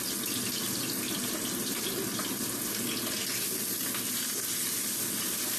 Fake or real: real